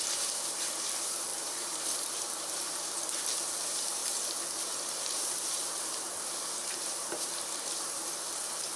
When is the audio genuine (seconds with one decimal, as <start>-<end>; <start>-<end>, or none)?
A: 4.0-4.6